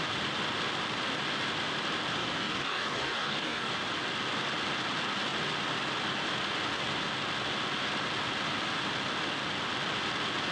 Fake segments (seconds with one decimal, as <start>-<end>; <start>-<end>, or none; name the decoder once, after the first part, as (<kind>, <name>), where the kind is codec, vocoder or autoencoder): 2.2-3.7 (codec, DAC)